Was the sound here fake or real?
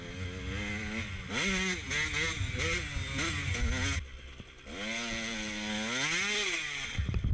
real